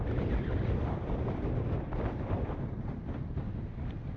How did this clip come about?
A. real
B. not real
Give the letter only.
A